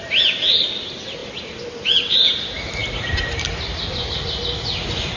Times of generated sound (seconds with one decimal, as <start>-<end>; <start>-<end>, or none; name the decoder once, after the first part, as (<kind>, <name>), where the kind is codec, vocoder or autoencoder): none